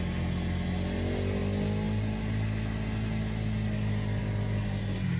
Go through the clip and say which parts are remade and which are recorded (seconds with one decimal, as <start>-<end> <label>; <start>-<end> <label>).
0.0-5.2 recorded